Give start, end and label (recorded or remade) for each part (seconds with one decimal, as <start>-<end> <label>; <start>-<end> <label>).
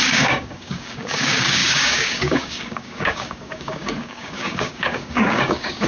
0.0-5.9 remade